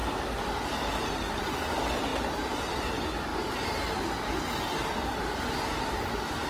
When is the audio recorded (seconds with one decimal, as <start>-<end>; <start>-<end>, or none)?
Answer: 0.0-6.5